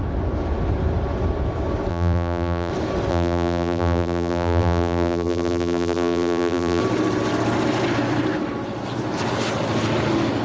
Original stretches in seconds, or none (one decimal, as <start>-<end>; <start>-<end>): 0.0-1.9; 2.7-3.1; 6.8-10.4